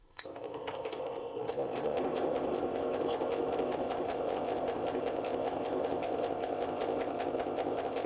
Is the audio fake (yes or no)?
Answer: yes